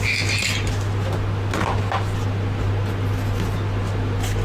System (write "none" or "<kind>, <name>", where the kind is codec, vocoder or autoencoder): none